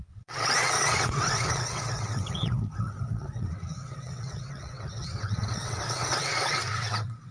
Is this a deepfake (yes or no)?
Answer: yes